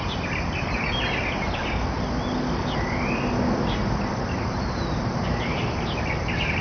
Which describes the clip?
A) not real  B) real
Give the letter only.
B